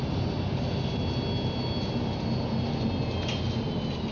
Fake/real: real